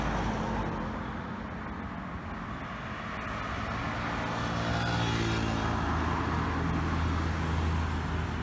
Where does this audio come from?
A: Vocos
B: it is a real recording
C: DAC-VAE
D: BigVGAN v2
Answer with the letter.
B